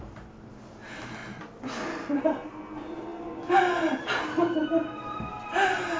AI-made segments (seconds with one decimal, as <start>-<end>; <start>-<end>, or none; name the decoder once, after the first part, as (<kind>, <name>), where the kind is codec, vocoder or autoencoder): 0.0-1.2 (vocoder, BigVGAN v2); 2.2-6.0